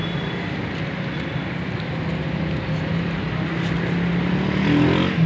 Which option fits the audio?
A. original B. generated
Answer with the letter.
A